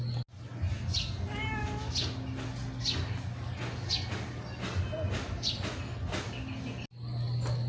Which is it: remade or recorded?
recorded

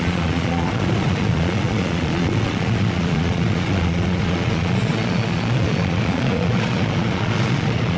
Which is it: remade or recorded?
remade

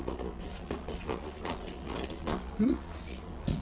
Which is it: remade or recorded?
remade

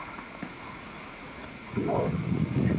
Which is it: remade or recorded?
remade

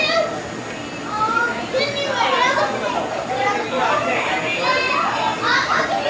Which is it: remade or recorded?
recorded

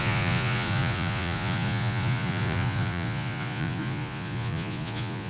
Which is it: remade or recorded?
remade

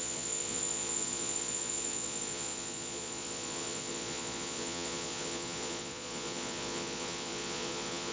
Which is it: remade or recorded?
remade